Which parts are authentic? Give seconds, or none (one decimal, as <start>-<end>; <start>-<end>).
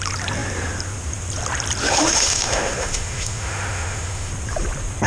0.0-1.8; 4.3-5.1